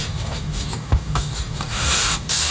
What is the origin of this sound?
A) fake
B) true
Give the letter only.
A